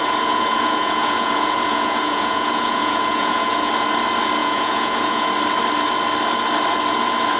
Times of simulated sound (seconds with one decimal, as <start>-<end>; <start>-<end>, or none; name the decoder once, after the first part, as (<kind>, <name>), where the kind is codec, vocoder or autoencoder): 0.0-3.7 (vocoder, Vocos); 4.4-5.3